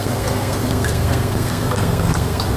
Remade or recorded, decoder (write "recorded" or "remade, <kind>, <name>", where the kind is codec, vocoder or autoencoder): remade, codec, SNAC